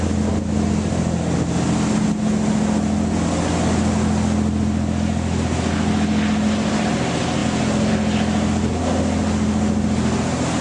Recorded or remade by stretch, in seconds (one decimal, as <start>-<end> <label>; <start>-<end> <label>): 0.0-10.6 recorded